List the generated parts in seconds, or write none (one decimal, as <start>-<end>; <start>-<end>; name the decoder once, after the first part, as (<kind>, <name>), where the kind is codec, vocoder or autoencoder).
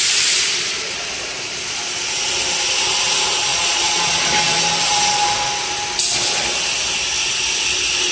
3.5-4.3 (vocoder, Vocos)